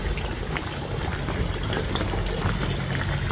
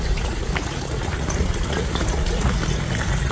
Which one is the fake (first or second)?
second